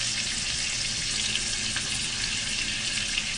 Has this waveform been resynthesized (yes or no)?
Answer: no